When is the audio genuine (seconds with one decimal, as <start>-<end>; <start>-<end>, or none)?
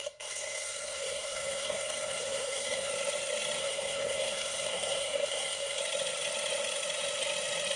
2.9-3.6; 5.8-7.8